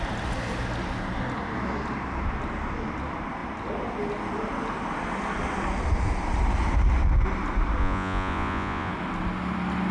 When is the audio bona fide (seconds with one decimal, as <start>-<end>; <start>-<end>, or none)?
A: 0.0-7.8; 8.9-9.9